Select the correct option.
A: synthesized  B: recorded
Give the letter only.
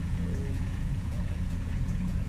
A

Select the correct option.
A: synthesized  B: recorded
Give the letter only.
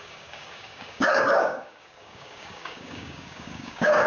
A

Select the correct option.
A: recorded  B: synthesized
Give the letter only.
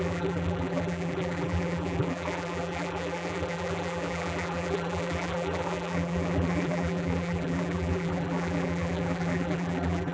B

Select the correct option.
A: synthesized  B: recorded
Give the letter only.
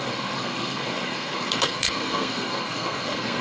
A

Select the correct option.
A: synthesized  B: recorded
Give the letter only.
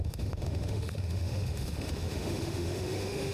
A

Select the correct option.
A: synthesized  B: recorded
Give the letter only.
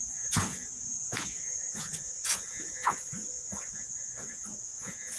A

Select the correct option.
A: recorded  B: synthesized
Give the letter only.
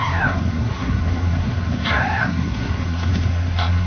B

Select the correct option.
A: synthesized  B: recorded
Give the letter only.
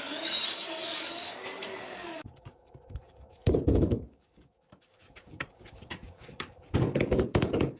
A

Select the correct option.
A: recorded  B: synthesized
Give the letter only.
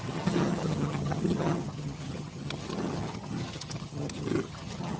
B